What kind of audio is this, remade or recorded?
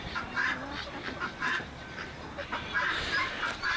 remade